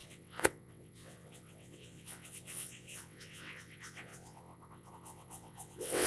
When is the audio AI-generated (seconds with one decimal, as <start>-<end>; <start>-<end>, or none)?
0.0-6.1